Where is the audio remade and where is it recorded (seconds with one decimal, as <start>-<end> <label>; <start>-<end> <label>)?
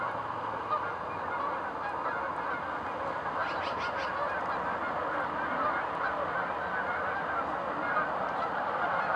0.0-9.2 recorded